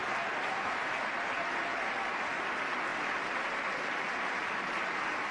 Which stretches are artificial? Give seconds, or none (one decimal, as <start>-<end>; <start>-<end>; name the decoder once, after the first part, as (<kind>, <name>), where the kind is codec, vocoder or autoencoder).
none